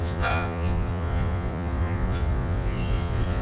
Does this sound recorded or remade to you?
remade